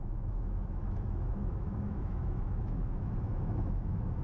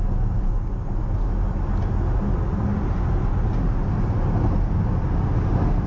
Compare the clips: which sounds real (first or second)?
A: second